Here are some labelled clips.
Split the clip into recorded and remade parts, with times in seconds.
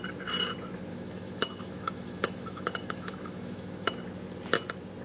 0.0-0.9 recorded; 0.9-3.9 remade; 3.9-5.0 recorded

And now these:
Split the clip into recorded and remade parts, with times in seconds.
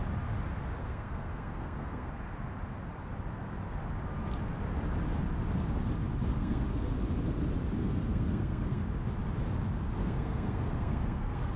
0.0-0.8 recorded; 0.8-2.1 remade; 2.1-6.3 recorded; 6.3-6.9 remade; 6.9-7.8 recorded; 7.8-8.8 remade; 8.8-10.0 recorded; 10.0-11.6 remade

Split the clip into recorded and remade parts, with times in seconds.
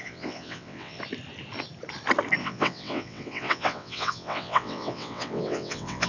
0.0-1.0 remade; 1.0-2.4 recorded; 2.4-6.1 remade